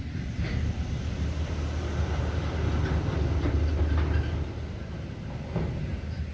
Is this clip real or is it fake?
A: real